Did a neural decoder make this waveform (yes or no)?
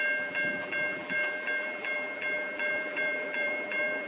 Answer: yes